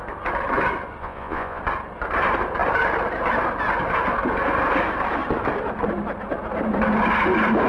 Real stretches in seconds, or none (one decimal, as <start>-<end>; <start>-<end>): 0.0-1.0; 1.6-7.7